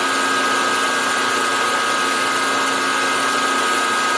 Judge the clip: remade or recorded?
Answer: recorded